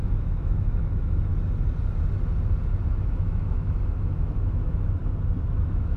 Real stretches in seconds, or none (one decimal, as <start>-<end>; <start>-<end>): 1.3-3.0; 5.0-5.5